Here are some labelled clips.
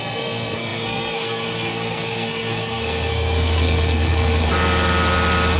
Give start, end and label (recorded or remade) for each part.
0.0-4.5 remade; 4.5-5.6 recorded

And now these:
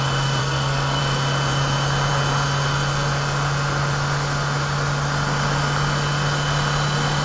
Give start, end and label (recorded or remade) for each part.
0.0-0.4 recorded; 0.4-1.0 remade; 1.0-7.2 recorded

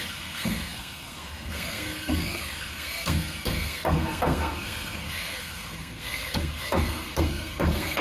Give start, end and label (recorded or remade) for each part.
0.0-8.0 remade

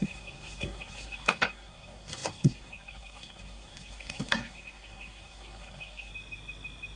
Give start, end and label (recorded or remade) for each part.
0.0-6.1 remade; 6.1-7.0 recorded

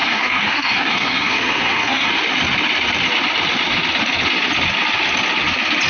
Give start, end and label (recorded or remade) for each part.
0.0-2.1 remade; 2.1-5.9 recorded

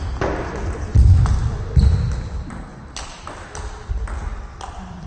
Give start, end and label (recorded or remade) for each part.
0.0-5.1 recorded